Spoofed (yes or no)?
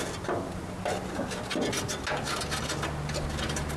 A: no